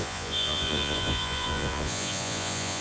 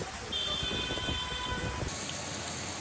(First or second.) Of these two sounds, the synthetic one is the first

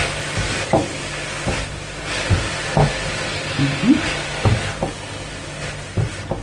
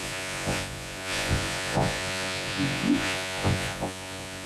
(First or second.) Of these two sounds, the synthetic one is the second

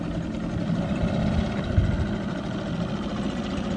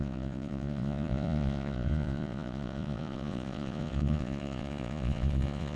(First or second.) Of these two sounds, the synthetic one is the second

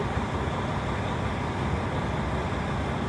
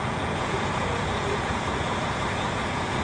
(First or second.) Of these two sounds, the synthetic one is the second